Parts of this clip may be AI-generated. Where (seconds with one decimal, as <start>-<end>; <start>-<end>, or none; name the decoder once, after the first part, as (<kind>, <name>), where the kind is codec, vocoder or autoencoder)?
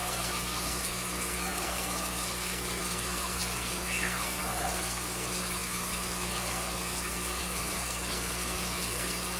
0.0-9.4 (codec, SNAC)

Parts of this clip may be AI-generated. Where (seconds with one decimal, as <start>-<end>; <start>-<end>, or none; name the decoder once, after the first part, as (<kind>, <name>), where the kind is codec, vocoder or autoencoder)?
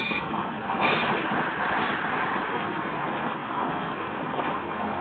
0.0-1.0 (codec, SNAC); 2.5-5.0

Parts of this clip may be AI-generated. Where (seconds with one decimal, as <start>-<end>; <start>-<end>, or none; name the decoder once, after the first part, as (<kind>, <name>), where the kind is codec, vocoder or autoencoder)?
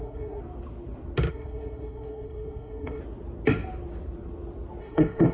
0.0-0.4 (codec, SNAC); 1.3-3.0; 4.8-5.3